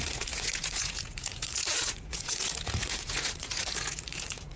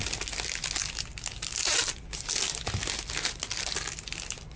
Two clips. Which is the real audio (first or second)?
second